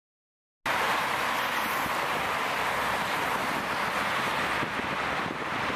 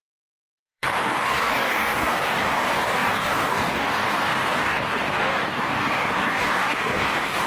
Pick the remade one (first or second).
second